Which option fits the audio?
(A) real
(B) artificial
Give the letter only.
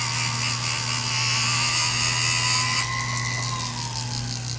A